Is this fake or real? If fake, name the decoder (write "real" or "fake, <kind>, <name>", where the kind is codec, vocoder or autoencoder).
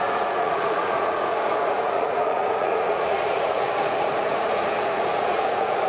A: fake, vocoder, Vocos